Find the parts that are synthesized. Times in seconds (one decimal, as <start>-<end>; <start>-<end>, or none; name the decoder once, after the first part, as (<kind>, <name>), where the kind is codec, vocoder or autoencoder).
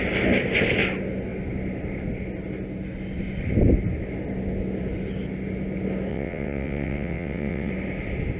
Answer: 6.1-7.7 (vocoder, WaveNeXt)